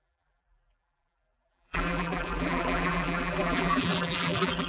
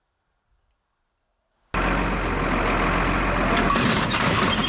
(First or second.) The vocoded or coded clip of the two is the first